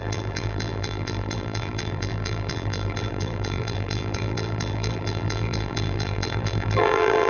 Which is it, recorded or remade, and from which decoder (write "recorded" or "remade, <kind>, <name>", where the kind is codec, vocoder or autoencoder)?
remade, vocoder, BigVGAN v2